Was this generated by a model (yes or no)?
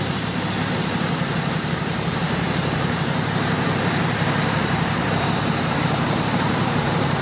yes